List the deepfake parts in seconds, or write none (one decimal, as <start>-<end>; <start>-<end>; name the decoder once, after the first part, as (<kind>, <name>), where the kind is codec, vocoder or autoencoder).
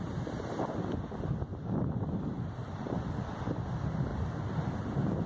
1.5-3.2 (vocoder, BigVGAN v2)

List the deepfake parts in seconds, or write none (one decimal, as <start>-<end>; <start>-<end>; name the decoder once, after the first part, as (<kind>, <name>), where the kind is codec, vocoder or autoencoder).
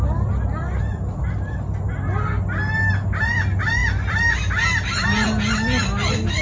3.8-4.3 (vocoder, BigVGAN v2)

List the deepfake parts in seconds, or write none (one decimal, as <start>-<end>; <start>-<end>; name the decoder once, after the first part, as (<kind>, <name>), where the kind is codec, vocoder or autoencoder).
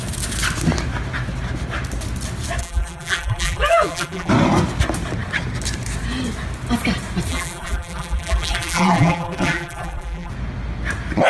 2.6-4.3 (vocoder, BigVGAN v2); 7.3-10.3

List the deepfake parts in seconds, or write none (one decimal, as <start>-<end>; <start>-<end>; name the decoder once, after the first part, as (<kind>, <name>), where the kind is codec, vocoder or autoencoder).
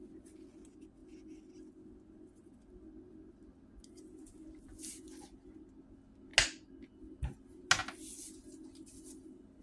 none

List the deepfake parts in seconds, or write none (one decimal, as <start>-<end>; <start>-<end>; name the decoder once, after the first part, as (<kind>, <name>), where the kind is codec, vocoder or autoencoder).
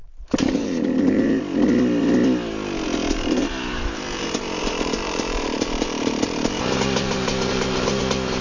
0.0-1.4 (vocoder, BigVGAN v2); 3.0-8.0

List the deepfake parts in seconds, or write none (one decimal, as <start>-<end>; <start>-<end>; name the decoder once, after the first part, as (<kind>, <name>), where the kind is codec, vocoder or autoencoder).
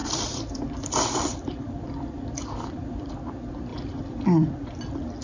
0.0-3.1 (vocoder, BigVGAN v2); 3.7-4.2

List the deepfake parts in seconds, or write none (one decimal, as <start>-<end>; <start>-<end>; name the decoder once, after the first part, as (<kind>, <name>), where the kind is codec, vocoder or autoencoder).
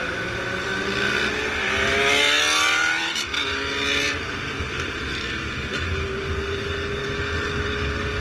none